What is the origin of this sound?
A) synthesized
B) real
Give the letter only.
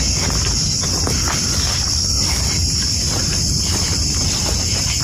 B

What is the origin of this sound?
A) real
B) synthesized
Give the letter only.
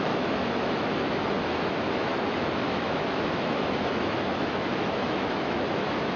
B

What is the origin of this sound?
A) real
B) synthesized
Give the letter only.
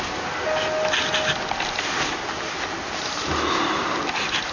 A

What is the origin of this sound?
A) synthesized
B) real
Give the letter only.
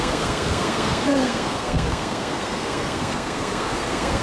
A